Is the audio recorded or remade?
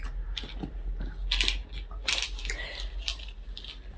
recorded